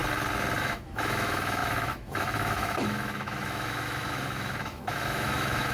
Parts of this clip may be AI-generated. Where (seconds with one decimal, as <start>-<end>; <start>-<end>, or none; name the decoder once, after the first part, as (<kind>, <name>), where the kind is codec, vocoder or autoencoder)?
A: 0.6-5.7 (autoencoder, DAC-VAE)

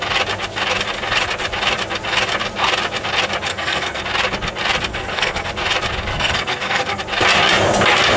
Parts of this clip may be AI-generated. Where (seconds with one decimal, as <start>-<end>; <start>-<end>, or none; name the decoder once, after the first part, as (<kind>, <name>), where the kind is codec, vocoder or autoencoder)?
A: 3.5-4.0 (codec, SNAC); 4.9-5.5; 6.1-7.0

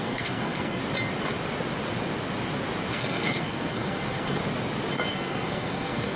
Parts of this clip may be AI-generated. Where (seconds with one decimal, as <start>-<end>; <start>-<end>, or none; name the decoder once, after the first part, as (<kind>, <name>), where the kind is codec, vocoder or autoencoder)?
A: 0.0-0.8 (codec, SNAC); 2.9-4.4; 5.1-6.2

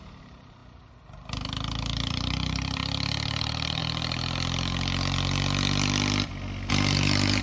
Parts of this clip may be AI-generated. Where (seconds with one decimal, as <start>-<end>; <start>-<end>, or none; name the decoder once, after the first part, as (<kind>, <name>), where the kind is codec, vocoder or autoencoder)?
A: 0.0-0.6 (vocoder, BigVGAN v2); 2.1-2.8; 3.4-3.8; 6.7-7.4